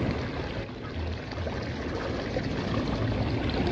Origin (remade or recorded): recorded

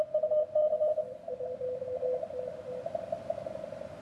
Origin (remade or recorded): recorded